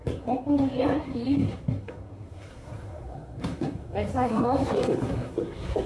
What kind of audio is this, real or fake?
fake